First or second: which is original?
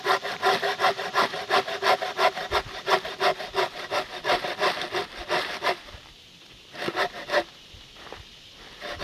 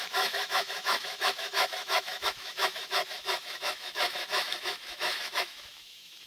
first